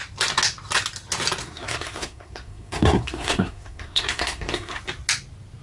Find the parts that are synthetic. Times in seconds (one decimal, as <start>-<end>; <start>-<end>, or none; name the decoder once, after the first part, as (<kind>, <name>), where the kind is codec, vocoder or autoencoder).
1.4-4.8 (codec, SNAC)